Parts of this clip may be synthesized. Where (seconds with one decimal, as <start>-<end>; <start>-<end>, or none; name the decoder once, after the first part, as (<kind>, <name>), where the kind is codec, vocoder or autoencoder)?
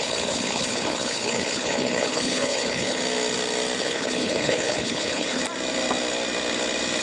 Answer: 0.0-3.0 (codec, HILCodec); 3.8-5.4